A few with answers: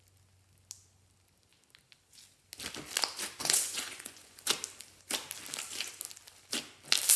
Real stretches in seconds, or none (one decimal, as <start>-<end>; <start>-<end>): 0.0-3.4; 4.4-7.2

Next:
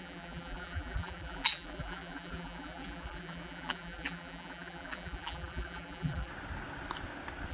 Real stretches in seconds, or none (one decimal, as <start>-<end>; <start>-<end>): 6.3-7.5

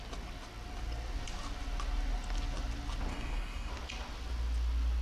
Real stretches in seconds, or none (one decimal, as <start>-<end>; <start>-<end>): 0.0-3.1; 3.7-5.0

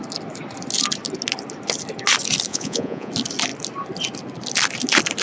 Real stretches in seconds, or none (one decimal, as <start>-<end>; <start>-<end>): 0.0-2.5; 3.1-5.2